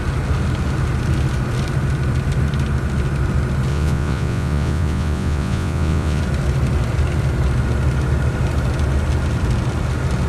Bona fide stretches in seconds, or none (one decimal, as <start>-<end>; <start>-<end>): 0.0-3.7; 6.2-10.3